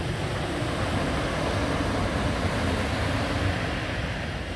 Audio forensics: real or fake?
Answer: real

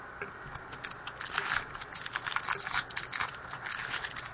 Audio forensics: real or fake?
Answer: real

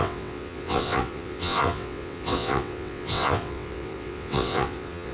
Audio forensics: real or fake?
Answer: fake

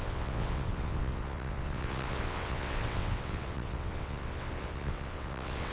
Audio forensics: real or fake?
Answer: fake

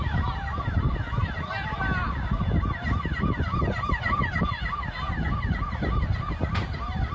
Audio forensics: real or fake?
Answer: real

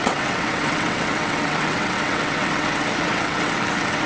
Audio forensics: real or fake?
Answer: fake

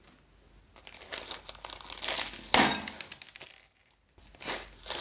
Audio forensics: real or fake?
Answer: real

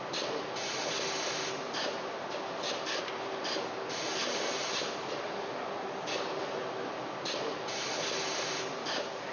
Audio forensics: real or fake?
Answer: real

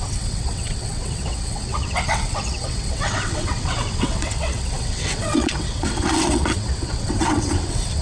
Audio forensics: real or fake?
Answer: fake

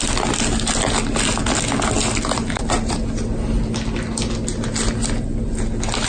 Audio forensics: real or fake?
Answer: real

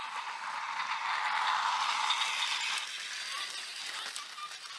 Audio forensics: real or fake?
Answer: real